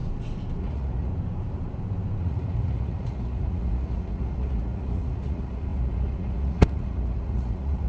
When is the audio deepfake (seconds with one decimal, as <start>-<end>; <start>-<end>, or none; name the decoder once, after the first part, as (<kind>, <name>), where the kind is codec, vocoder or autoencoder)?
0.6-1.1 (vocoder, Vocos); 2.2-7.9